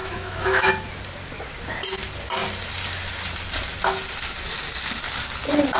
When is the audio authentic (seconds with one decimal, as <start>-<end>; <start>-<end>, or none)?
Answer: 0.7-5.8